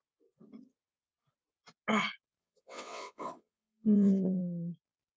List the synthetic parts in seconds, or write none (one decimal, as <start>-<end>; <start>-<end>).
2.4-4.4